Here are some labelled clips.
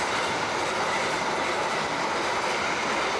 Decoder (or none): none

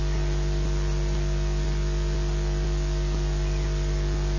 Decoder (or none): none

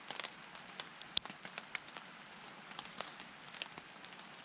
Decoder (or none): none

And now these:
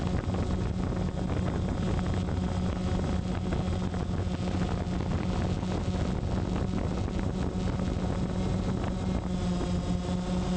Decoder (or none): none